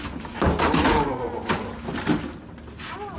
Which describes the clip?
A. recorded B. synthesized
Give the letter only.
A